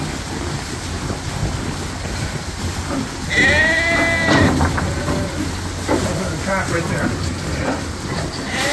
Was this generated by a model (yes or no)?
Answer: no